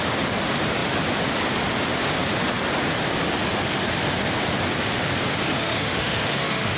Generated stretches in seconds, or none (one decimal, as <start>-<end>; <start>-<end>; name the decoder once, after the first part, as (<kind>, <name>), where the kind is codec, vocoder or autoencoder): 5.5-6.8 (autoencoder, DAC-VAE)